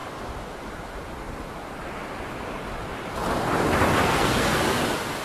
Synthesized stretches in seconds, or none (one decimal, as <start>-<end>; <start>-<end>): 4.0-4.8